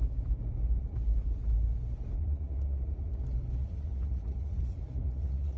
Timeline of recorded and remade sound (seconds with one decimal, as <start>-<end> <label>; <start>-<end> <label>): 0.0-2.2 recorded; 2.2-3.2 remade; 3.2-3.6 recorded; 3.6-5.6 remade